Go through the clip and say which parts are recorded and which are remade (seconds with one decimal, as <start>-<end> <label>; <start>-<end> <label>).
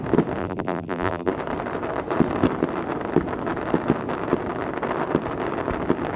0.0-0.4 recorded; 0.4-1.3 remade; 1.3-6.2 recorded